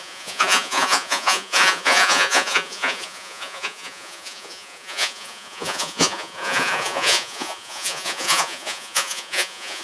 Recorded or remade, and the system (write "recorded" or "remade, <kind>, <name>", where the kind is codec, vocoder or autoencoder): remade, vocoder, Vocos